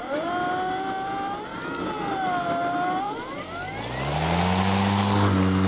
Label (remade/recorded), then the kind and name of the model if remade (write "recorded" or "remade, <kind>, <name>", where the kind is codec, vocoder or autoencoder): recorded